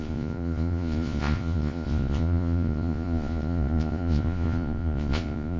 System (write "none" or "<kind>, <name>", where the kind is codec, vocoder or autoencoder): vocoder, Vocos